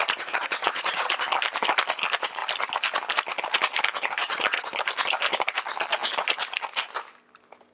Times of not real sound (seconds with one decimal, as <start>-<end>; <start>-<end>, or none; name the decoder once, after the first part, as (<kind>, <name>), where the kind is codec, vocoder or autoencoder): 0.0-1.2 (vocoder, Vocos); 4.2-4.8